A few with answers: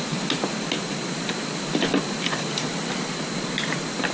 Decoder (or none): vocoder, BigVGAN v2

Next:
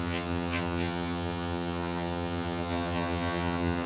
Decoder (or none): vocoder, HiFi-GAN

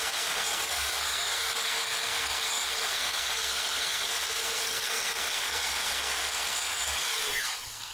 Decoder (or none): codec, SNAC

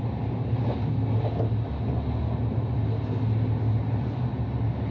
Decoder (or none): none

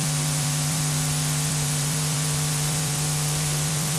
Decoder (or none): vocoder, BigVGAN v2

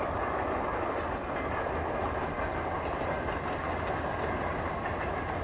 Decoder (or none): none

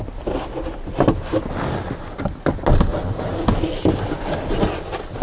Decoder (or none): none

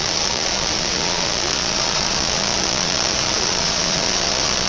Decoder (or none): vocoder, Vocos